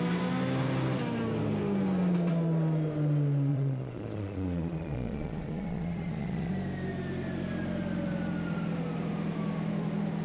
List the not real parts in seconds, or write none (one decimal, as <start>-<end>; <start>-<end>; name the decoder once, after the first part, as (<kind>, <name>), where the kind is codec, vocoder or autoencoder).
3.5-6.5 (vocoder, Vocos)